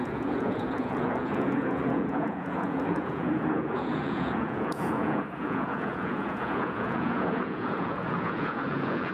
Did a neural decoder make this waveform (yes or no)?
yes